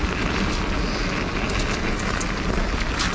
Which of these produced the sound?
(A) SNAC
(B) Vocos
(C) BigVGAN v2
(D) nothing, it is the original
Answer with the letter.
D